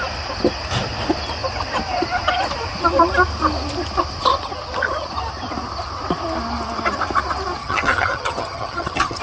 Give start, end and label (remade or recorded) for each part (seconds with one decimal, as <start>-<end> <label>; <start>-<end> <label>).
0.0-7.6 recorded; 7.6-9.2 remade